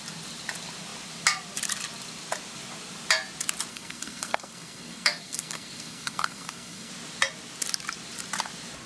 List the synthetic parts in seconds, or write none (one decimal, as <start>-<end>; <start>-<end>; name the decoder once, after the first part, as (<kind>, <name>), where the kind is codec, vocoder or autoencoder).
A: 3.7-6.9 (codec, SNAC)

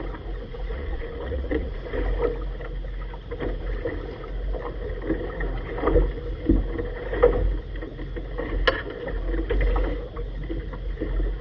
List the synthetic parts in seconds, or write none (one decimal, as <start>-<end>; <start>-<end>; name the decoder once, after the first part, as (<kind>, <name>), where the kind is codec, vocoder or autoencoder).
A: 0.5-1.8 (vocoder, Vocos)

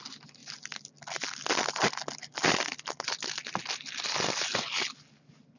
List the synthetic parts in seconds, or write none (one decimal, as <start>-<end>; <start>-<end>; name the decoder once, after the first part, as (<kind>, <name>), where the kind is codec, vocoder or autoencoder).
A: none

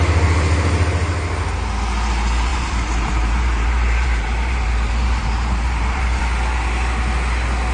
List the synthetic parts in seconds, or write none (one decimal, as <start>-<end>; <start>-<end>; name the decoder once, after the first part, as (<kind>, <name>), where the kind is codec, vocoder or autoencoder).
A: 2.5-6.2 (vocoder, BigVGAN v2)

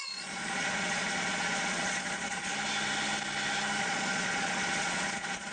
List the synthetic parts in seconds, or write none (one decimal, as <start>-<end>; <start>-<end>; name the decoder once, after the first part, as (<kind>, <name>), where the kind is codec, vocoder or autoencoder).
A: 0.0-2.5 (vocoder, Vocos); 3.8-5.5